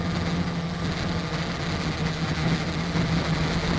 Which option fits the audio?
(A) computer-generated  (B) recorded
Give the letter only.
B